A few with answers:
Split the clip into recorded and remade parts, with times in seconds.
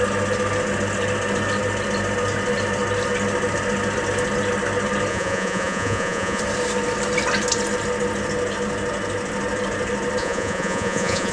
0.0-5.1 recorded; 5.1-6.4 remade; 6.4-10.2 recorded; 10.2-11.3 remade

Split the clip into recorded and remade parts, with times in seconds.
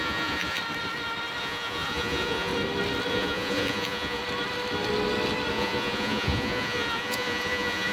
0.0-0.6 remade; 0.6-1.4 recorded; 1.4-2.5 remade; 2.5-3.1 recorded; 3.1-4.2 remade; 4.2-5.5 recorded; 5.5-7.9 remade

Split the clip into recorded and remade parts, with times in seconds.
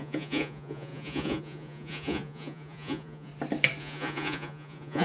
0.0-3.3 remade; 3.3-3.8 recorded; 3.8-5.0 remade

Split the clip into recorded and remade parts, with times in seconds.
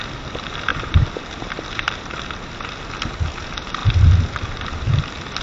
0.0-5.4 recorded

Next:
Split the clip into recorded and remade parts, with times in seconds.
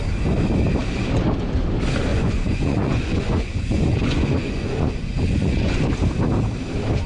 0.0-2.1 recorded; 2.1-5.8 remade; 5.8-7.1 recorded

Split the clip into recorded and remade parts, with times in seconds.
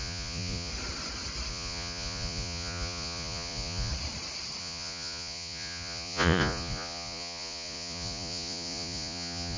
0.0-0.7 remade; 0.7-1.5 recorded; 1.5-3.9 remade; 3.9-4.6 recorded; 4.6-9.6 remade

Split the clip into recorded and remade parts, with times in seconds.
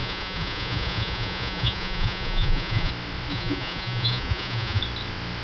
0.0-2.9 remade; 2.9-3.3 recorded; 3.3-4.8 remade; 4.8-5.4 recorded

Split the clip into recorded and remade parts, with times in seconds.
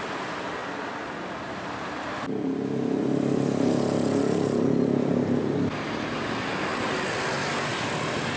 0.0-8.4 recorded